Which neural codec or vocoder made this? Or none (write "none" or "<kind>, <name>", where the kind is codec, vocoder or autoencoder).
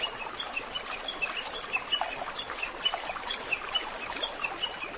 none